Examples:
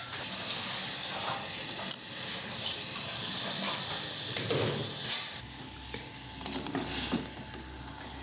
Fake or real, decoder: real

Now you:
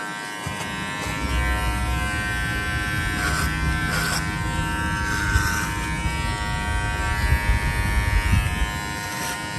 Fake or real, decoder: real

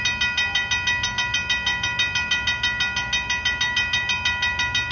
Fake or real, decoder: real